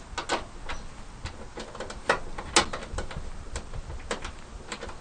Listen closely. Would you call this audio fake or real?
real